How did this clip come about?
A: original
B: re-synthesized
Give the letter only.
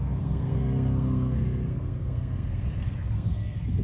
B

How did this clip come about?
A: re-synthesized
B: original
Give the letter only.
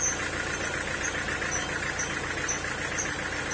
B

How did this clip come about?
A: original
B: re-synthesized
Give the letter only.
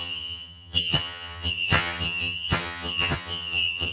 B